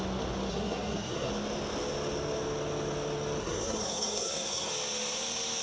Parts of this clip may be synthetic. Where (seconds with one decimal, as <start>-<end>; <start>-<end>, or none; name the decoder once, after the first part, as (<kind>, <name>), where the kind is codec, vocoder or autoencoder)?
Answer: 0.5-1.3 (codec, SNAC); 3.4-4.7